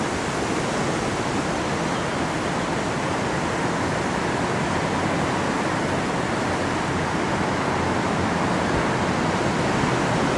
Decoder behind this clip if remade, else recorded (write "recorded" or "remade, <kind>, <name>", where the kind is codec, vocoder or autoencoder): recorded